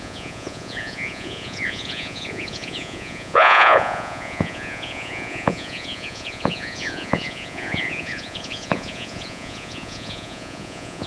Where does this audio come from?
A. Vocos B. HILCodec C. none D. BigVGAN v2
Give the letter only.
A